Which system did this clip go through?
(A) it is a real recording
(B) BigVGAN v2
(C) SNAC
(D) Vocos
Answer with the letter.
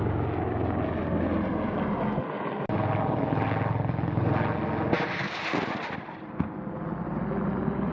A